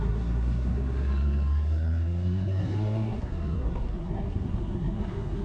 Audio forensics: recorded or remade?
remade